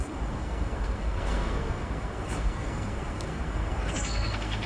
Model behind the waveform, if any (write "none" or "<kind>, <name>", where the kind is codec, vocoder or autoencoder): codec, SNAC